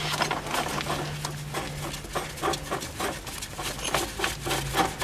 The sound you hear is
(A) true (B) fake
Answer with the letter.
A